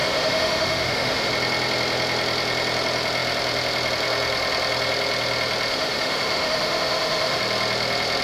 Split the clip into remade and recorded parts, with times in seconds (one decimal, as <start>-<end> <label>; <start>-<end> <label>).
0.0-1.3 remade; 1.3-5.7 recorded; 5.7-7.4 remade; 7.4-8.2 recorded